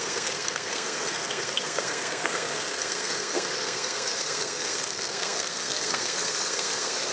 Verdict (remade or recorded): remade